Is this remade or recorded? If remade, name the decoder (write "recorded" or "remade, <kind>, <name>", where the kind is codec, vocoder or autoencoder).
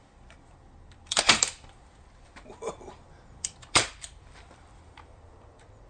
remade, vocoder, BigVGAN v2